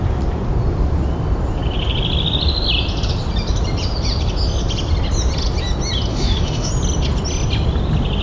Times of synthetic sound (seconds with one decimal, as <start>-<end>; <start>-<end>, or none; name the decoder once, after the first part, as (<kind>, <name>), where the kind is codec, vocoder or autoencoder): 6.1-6.7 (autoencoder, DAC-VAE)